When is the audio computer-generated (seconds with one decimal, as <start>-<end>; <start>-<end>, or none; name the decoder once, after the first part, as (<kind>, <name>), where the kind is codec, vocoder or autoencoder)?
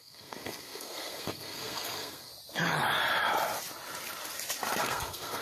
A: 0.0-2.3 (codec, SNAC); 4.8-5.4